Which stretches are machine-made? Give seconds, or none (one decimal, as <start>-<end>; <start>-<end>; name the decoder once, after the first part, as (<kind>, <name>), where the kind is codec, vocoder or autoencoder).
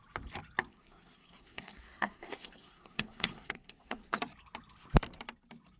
0.7-4.2 (codec, SNAC)